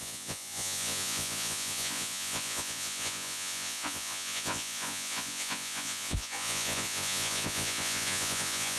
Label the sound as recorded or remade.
remade